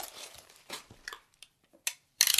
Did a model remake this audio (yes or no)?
yes